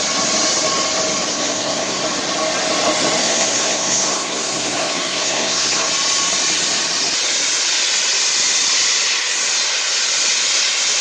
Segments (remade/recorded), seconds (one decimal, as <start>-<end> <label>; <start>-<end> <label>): 0.0-1.3 recorded; 1.3-2.0 remade; 2.0-3.2 recorded; 3.2-5.9 remade; 5.9-11.0 recorded